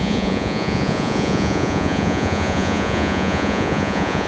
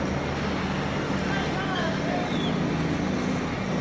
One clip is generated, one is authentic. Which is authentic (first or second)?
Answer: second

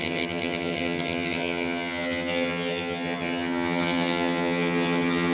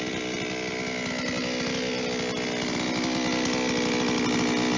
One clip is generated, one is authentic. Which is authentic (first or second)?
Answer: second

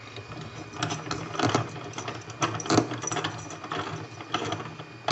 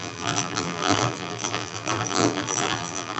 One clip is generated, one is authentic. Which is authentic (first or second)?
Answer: first